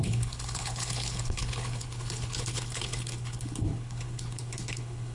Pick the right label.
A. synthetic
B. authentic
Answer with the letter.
A